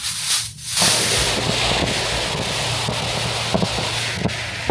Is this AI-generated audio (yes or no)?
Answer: no